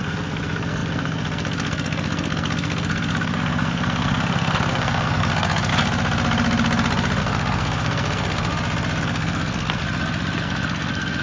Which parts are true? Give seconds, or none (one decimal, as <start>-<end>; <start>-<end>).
5.7-7.2; 8.5-9.0; 9.8-10.4